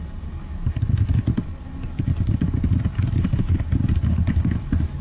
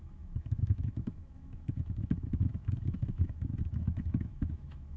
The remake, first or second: second